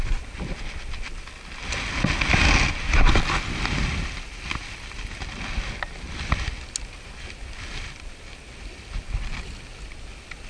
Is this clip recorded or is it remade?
recorded